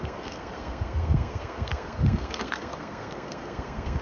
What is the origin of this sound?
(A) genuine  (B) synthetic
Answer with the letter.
B